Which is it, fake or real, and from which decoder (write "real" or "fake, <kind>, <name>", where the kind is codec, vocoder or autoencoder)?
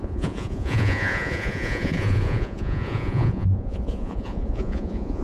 fake, vocoder, Vocos